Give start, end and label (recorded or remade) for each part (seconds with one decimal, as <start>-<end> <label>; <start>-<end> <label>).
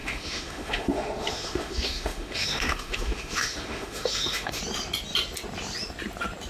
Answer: 0.0-4.6 remade; 4.6-6.5 recorded